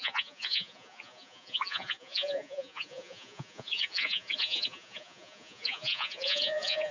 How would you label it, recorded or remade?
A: remade